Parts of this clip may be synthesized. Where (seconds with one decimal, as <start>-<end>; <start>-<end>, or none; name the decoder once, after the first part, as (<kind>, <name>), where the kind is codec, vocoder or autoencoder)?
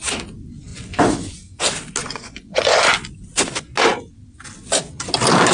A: 0.7-1.6 (vocoder, Vocos); 2.0-2.9